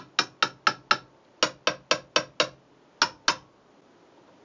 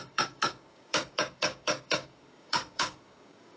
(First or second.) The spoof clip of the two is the second